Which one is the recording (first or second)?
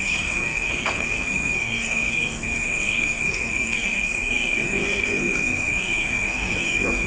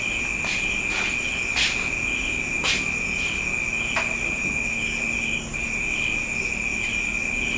second